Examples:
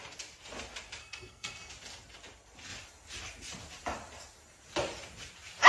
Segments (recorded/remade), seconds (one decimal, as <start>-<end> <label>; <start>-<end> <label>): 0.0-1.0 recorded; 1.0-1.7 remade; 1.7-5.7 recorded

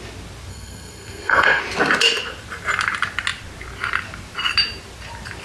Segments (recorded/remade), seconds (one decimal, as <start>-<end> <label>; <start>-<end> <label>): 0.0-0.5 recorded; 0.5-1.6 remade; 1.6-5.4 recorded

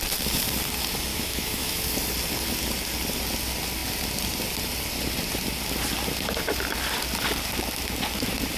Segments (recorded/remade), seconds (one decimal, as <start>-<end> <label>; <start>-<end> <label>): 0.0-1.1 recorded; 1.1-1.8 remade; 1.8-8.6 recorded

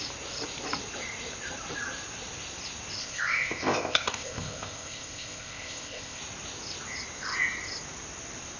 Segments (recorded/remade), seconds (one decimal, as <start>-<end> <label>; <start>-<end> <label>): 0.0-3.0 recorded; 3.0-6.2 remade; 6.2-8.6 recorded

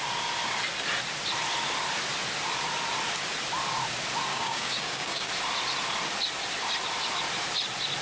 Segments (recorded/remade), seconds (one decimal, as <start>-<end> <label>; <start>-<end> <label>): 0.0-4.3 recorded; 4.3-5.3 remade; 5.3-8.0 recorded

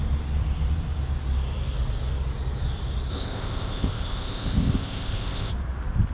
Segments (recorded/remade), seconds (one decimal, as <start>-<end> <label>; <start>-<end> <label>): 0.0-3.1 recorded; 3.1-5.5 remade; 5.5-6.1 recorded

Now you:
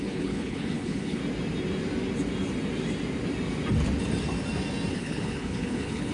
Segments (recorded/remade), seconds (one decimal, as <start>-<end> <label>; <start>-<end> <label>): 0.0-1.2 remade; 1.2-4.9 recorded; 4.9-6.1 remade